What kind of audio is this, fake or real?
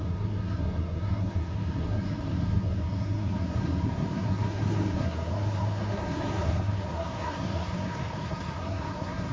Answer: fake